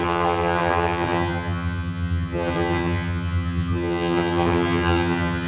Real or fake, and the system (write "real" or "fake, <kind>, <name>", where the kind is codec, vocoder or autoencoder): fake, vocoder, HiFi-GAN